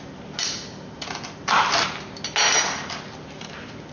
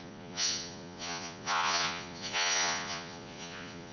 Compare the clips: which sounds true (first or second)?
first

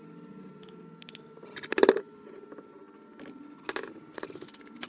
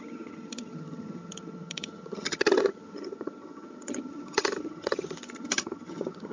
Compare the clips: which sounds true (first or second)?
first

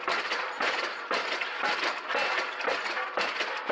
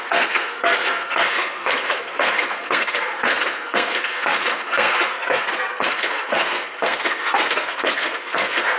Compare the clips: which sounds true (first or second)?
first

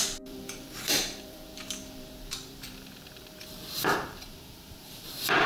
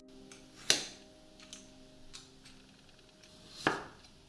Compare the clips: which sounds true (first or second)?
second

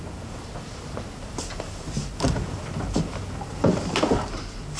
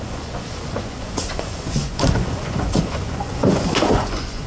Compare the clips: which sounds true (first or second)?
first